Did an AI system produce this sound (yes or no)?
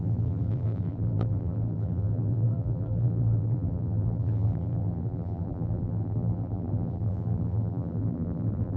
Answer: yes